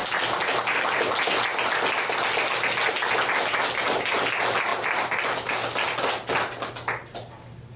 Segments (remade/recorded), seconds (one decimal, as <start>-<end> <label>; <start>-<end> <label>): 0.0-7.8 recorded